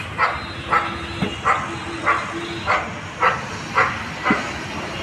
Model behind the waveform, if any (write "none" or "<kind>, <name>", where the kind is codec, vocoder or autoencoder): none